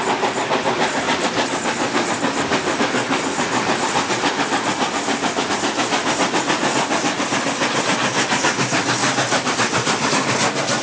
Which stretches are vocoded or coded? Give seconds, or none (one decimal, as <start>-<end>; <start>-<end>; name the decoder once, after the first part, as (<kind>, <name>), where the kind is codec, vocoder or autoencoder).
3.0-5.5 (vocoder, BigVGAN v2); 9.0-10.1